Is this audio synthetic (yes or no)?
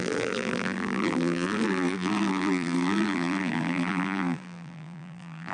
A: yes